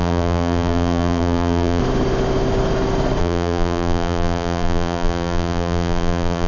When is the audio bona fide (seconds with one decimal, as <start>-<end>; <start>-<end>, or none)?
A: 1.8-3.2